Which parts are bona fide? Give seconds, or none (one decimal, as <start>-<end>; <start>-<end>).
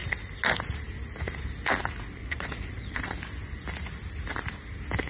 0.0-2.2; 3.1-5.1